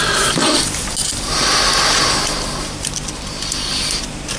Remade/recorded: recorded